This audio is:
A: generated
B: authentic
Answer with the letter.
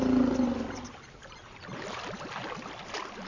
B